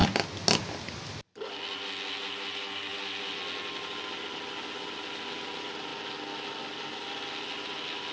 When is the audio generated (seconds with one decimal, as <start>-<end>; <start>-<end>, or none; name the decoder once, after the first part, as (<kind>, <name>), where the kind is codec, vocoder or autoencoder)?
none